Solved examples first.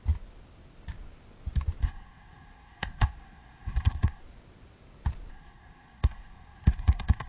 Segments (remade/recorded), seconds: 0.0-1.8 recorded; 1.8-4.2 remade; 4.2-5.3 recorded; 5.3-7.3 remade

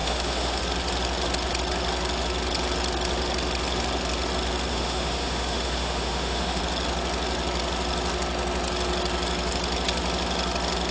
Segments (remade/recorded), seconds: 0.0-0.6 remade; 0.6-4.7 recorded; 4.7-6.6 remade; 6.6-10.9 recorded